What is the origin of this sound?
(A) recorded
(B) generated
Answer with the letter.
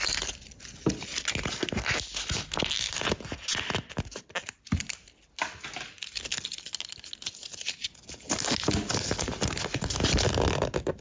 A